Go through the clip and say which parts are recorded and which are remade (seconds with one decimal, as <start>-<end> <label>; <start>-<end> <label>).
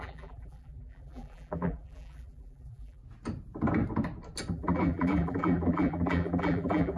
0.0-3.0 remade; 3.0-4.5 recorded; 4.5-7.0 remade